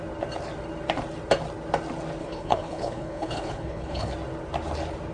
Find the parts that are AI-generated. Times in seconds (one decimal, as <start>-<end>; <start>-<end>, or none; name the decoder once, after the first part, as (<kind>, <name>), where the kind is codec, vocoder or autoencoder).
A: 2.2-4.1 (codec, HILCodec)